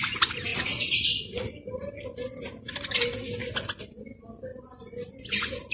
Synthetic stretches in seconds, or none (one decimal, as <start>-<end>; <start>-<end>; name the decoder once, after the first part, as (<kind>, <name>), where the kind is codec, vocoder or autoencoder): none

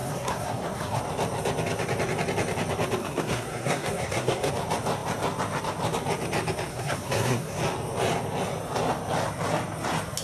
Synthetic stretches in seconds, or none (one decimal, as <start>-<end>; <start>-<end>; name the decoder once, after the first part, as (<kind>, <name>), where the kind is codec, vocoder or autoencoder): 0.0-1.0 (codec, SNAC); 3.0-4.5; 6.7-7.6

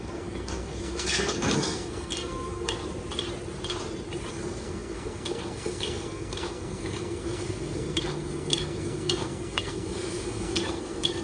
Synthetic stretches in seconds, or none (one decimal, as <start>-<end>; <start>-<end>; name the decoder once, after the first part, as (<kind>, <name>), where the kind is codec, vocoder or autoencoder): 0.0-2.8 (codec, SNAC); 4.3-11.2

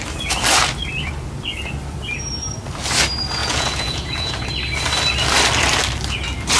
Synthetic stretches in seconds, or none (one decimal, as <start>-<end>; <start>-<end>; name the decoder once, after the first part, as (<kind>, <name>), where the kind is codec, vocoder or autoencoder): 3.4-4.3 (vocoder, Vocos)